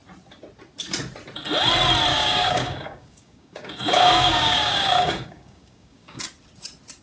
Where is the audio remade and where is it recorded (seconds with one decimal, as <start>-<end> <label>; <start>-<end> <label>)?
0.0-2.1 recorded; 2.1-6.2 remade; 6.2-7.0 recorded